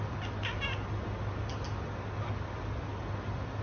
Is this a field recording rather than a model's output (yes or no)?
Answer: yes